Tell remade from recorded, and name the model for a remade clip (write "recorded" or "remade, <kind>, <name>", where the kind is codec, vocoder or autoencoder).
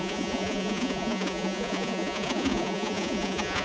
remade, vocoder, Vocos